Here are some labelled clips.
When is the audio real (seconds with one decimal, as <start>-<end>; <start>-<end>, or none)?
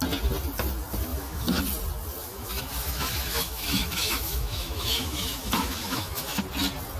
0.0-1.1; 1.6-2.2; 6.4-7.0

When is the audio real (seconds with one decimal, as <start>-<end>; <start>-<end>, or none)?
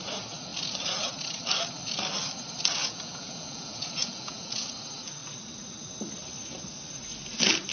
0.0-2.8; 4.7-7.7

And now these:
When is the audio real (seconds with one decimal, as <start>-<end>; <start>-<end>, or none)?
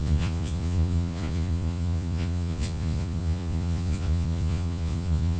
none